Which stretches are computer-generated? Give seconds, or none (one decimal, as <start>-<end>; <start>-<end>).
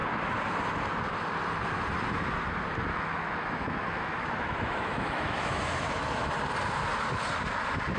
2.9-6.3